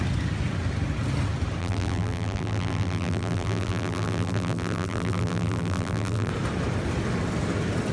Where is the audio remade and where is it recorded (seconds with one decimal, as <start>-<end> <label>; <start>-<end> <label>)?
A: 0.0-1.6 recorded; 1.6-6.3 remade; 6.3-7.9 recorded